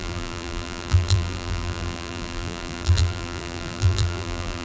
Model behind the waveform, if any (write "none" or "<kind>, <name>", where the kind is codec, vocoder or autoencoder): vocoder, BigVGAN v2